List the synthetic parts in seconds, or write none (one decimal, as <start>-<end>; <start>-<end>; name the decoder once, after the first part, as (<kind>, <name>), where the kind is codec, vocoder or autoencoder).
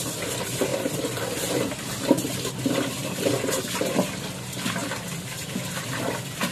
0.7-1.3 (vocoder, BigVGAN v2); 3.0-4.1; 4.8-6.0